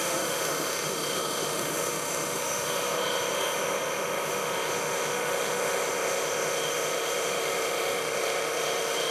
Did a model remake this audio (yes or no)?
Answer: yes